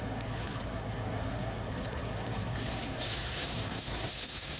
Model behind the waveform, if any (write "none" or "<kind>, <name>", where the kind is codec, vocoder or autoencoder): codec, SNAC